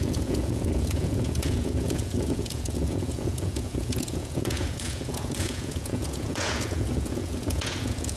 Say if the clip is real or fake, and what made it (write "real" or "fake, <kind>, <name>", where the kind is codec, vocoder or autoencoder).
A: fake, vocoder, Vocos